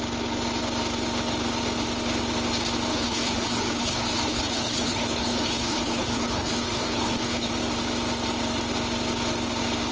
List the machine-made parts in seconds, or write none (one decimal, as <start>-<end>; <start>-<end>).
2.9-7.5